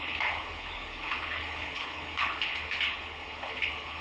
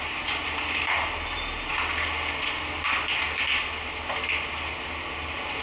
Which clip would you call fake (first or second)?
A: first